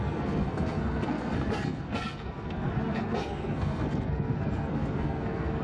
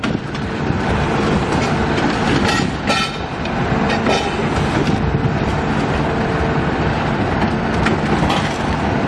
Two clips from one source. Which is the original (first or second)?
second